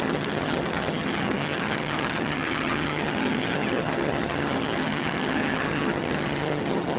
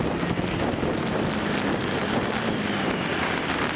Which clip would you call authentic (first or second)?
second